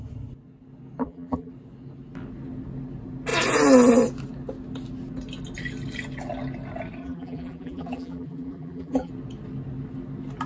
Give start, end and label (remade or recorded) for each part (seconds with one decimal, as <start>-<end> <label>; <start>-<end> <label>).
0.0-1.0 recorded; 1.0-1.5 remade; 1.5-7.0 recorded; 7.0-9.1 remade; 9.1-10.5 recorded